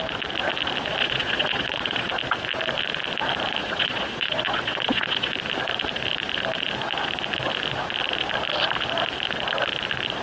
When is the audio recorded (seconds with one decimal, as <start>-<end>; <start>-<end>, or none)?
0.0-1.0; 2.1-3.6; 5.3-10.2